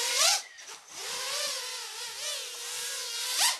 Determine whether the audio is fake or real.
real